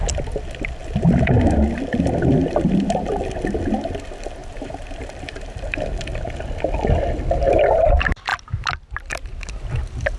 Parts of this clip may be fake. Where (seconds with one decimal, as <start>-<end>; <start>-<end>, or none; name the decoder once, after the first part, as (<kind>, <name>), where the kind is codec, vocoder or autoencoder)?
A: 4.4-5.7 (vocoder, BigVGAN v2)